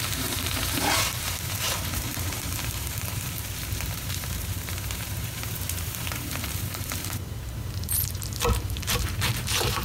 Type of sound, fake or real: fake